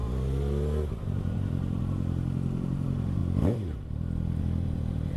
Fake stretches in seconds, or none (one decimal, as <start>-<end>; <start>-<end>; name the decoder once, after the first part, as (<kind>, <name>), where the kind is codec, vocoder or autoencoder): 0.9-3.2 (vocoder, BigVGAN v2); 4.4-5.2